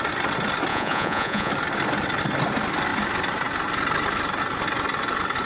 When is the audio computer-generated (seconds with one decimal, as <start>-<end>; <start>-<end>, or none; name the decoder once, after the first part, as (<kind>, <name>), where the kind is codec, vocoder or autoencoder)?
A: 0.7-1.5 (vocoder, Vocos)

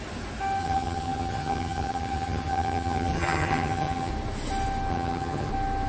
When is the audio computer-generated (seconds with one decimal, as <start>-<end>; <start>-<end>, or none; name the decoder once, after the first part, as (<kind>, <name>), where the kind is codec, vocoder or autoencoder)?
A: 0.6-4.1 (vocoder, HiFi-GAN); 4.9-5.5

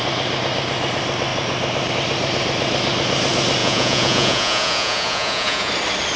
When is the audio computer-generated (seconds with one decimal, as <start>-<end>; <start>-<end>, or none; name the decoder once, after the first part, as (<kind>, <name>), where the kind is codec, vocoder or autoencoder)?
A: 3.6-5.7 (vocoder, Vocos)

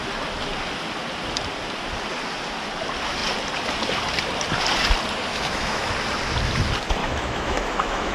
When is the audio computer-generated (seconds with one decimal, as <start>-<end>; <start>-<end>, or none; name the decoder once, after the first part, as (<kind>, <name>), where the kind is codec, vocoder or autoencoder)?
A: 5.3-5.9 (autoencoder, DAC-VAE); 7.0-8.1

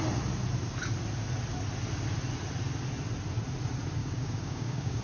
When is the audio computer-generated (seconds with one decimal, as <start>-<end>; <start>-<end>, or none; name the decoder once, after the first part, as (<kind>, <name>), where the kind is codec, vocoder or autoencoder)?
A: 4.0-5.0 (codec, DAC)

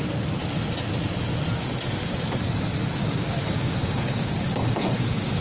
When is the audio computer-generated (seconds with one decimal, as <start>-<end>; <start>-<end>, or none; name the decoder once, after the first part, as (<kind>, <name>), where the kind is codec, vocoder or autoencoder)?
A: 3.0-5.4 (codec, DAC)

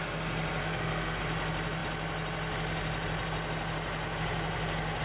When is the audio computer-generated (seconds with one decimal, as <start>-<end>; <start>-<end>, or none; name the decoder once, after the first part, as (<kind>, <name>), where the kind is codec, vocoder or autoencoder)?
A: 0.6-1.2 (codec, SNAC)

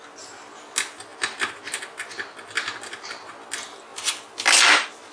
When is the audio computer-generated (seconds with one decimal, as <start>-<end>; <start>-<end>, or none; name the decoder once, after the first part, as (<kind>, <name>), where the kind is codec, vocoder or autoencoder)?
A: 1.1-1.8 (vocoder, BigVGAN v2)